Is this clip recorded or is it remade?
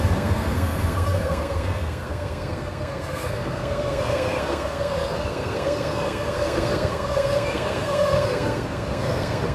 remade